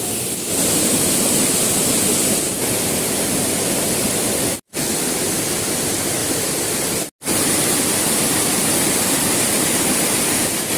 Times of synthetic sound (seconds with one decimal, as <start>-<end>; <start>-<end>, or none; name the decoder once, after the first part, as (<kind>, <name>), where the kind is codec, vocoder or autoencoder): none